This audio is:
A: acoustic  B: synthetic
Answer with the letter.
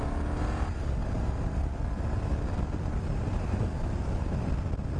A